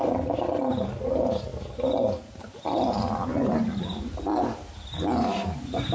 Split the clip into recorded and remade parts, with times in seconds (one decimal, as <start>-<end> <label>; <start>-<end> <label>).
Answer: 0.0-5.9 recorded